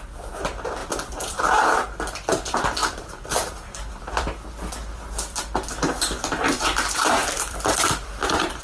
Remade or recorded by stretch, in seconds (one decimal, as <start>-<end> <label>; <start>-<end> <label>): 0.0-0.8 recorded; 0.8-1.5 remade; 1.5-2.8 recorded; 2.8-4.7 remade; 4.7-7.2 recorded; 7.2-8.2 remade; 8.2-8.6 recorded